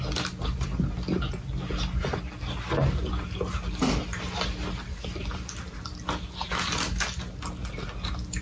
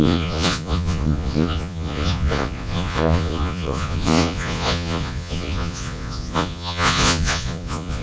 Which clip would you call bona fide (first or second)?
first